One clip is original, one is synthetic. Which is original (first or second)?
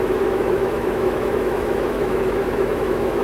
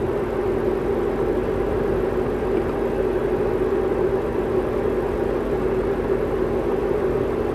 second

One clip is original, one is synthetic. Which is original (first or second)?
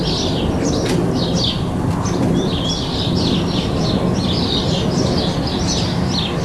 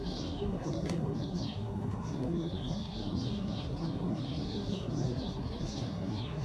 first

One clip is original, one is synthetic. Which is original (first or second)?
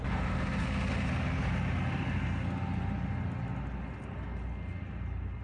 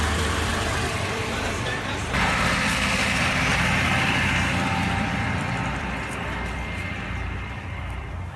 first